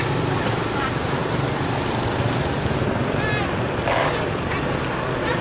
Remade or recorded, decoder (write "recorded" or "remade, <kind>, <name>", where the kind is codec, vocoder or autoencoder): recorded